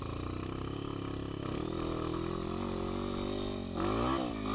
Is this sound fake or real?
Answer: real